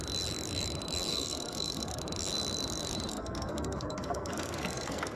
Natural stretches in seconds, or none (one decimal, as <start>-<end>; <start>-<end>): 0.0-1.1; 2.0-3.1